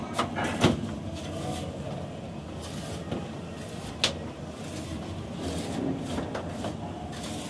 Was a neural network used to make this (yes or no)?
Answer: no